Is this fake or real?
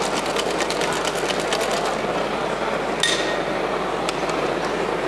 real